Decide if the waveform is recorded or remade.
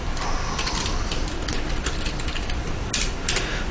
recorded